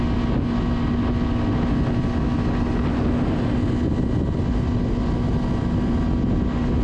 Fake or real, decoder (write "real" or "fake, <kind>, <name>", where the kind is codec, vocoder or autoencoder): real